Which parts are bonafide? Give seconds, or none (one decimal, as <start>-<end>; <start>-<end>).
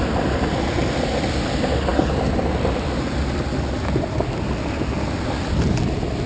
0.0-6.3